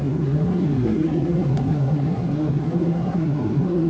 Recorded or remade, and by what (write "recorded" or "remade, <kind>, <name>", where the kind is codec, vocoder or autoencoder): remade, codec, SNAC